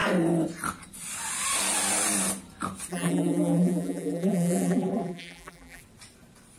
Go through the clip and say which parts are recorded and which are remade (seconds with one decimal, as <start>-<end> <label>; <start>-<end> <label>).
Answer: 0.0-2.9 recorded; 2.9-5.8 remade; 5.8-6.6 recorded